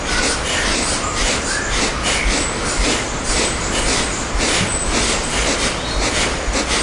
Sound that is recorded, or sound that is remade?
recorded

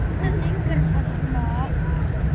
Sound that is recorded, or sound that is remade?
recorded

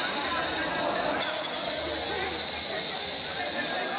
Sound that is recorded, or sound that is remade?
recorded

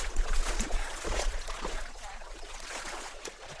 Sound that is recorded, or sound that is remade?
remade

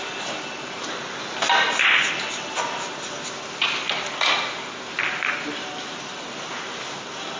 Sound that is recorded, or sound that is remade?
recorded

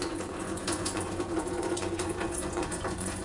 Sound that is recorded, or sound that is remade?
remade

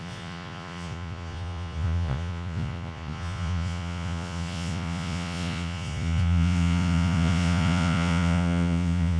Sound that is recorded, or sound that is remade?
remade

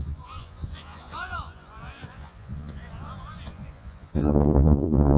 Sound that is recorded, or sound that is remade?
remade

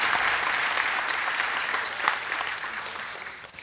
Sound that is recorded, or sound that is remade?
recorded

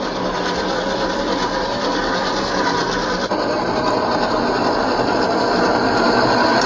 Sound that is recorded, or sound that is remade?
recorded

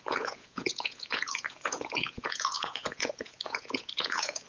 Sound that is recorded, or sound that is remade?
remade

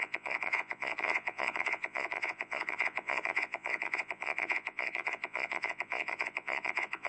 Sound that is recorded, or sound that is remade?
remade